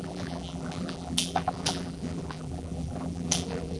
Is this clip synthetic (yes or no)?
yes